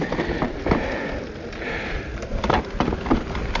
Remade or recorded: recorded